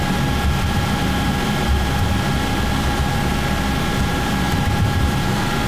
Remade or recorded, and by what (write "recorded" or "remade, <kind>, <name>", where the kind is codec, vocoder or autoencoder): recorded